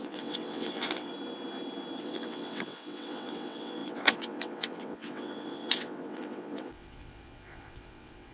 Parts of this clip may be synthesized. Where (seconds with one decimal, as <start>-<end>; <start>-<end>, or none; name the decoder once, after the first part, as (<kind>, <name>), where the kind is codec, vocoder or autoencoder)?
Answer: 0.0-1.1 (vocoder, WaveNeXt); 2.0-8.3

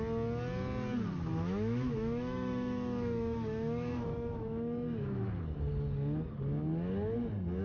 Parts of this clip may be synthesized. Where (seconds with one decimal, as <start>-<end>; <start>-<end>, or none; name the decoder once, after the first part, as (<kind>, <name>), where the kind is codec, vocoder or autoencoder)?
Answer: 1.3-5.2 (autoencoder, DAC-VAE)

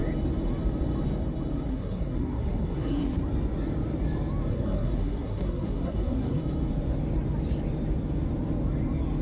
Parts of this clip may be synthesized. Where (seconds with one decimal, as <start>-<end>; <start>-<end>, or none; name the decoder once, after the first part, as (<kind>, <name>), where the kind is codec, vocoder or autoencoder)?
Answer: 1.7-3.2 (codec, SNAC); 4.5-6.4

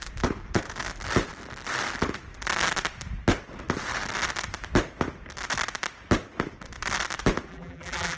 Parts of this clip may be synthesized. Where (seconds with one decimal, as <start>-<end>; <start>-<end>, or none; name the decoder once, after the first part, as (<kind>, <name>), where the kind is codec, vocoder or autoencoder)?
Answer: 7.5-8.2 (vocoder, BigVGAN v2)